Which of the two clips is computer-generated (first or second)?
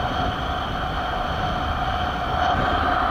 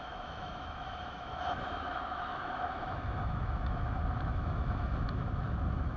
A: second